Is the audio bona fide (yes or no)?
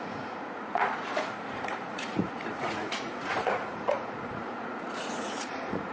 no